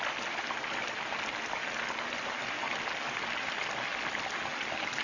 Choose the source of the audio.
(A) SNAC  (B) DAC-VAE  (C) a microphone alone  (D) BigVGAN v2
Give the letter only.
C